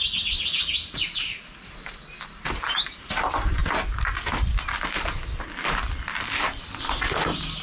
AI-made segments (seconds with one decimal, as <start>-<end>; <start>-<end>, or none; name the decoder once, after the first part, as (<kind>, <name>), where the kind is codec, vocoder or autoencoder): 0.0-3.6 (vocoder, BigVGAN v2); 6.6-7.6